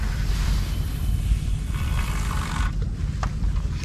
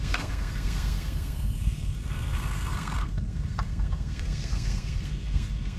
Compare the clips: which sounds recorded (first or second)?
first